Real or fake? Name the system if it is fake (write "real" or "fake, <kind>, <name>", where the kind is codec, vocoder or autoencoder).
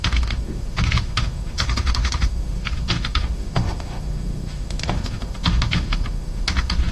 fake, autoencoder, DAC-VAE